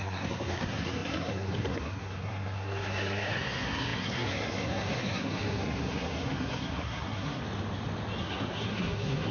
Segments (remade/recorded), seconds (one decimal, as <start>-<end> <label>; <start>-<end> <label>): 0.0-7.4 remade; 7.4-8.2 recorded; 8.2-9.3 remade